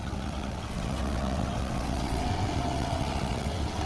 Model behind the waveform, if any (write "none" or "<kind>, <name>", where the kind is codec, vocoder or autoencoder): vocoder, WaveNeXt